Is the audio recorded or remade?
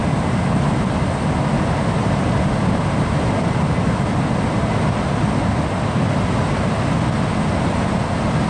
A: recorded